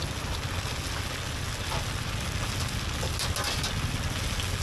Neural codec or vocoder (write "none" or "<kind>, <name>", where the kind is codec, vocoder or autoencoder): none